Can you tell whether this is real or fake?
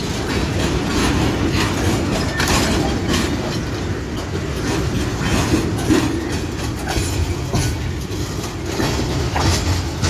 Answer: real